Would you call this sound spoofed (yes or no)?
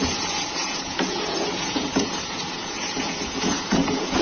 yes